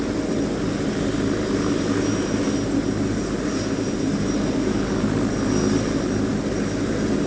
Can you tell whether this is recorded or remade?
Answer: recorded